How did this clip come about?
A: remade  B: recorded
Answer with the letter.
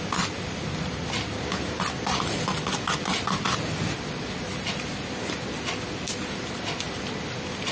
B